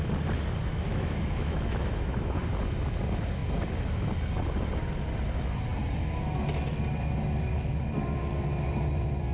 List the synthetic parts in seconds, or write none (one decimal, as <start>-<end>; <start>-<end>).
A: 0.6-2.4